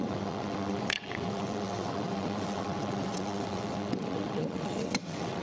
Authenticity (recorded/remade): remade